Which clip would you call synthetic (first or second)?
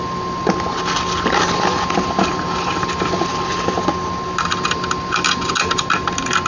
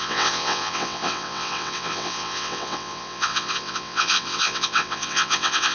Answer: second